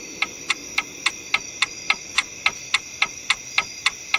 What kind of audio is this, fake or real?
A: real